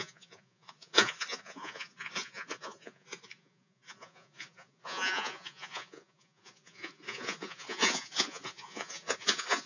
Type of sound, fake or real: fake